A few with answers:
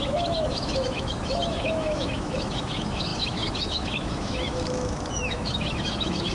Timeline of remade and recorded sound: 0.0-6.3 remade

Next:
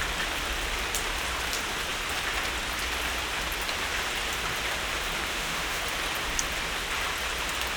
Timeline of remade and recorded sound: 0.0-5.3 recorded; 5.3-5.8 remade; 5.8-7.8 recorded

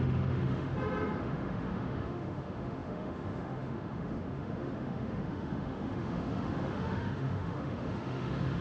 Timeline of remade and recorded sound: 0.0-0.7 remade; 0.7-1.2 recorded; 1.2-8.6 remade

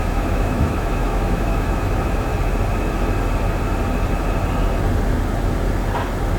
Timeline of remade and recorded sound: 0.0-2.3 remade; 2.3-6.4 recorded

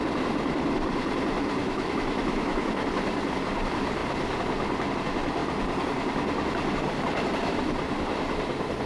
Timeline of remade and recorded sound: 0.0-1.6 recorded; 1.6-2.7 remade; 2.7-8.9 recorded